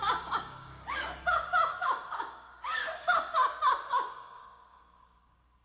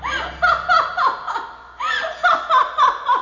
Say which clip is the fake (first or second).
first